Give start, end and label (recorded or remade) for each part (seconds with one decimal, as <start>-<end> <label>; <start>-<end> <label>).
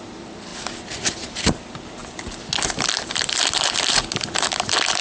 0.0-5.0 recorded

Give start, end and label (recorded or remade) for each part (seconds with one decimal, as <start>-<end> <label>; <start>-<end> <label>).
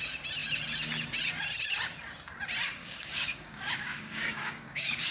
0.0-2.8 recorded; 2.8-5.1 remade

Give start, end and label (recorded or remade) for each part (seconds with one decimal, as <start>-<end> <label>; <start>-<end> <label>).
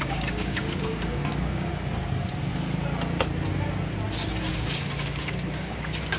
0.0-1.7 remade; 1.7-4.5 recorded; 4.5-6.2 remade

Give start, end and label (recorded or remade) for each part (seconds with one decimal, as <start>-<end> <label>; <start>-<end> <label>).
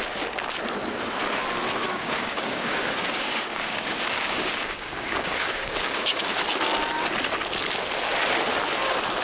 0.0-1.8 recorded; 1.8-6.4 remade; 6.4-9.2 recorded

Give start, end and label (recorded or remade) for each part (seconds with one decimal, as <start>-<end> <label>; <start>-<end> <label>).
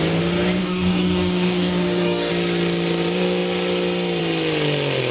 0.0-0.6 recorded; 0.6-2.3 remade; 2.3-5.1 recorded